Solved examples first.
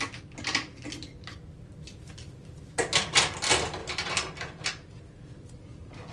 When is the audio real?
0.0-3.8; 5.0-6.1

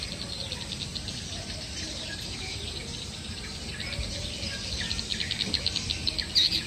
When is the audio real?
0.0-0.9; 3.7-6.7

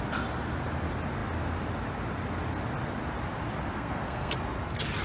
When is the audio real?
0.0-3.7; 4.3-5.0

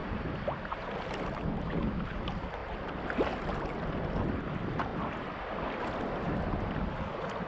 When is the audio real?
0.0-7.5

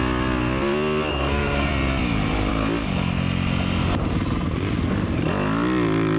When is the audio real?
0.0-1.1; 1.7-6.2